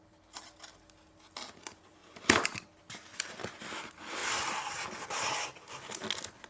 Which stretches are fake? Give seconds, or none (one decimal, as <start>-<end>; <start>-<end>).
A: none